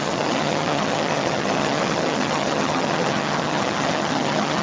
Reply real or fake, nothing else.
fake